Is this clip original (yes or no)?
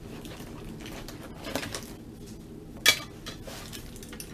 yes